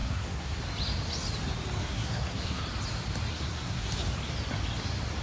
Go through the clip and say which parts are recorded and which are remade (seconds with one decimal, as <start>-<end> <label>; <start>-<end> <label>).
0.0-0.6 remade; 0.6-1.8 recorded; 1.8-2.6 remade; 2.6-3.3 recorded; 3.3-3.9 remade; 3.9-5.2 recorded